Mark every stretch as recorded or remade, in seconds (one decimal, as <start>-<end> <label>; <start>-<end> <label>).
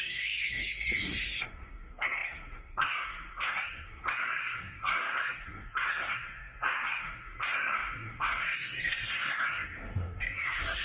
0.0-10.8 remade